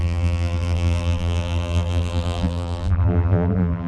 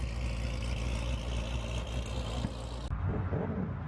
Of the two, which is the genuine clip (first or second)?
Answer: second